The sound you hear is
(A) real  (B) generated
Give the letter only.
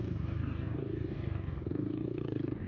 B